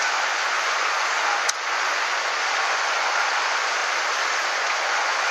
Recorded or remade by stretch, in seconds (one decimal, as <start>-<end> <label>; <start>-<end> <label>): 0.0-3.8 remade; 3.8-4.5 recorded; 4.5-5.3 remade